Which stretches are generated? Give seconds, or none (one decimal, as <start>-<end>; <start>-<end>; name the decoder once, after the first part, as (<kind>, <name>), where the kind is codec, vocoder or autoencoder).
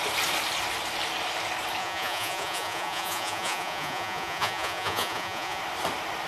1.8-5.6 (vocoder, Vocos)